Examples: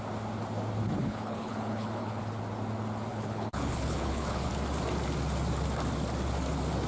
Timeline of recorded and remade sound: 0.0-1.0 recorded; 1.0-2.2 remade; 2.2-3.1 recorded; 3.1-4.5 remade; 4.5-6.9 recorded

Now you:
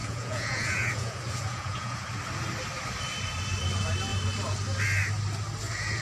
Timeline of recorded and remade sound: 0.0-2.1 remade; 2.1-6.0 recorded